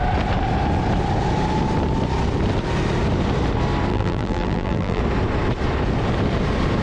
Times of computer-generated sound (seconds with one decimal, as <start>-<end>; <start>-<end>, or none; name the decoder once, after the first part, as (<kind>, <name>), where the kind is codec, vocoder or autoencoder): 3.9-5.0 (vocoder, BigVGAN v2)